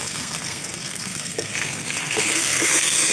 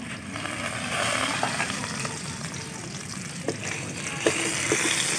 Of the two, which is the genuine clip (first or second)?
second